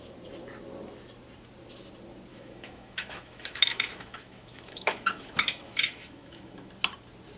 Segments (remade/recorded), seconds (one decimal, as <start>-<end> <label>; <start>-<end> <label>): 0.0-2.3 recorded; 2.3-6.7 remade; 6.7-7.4 recorded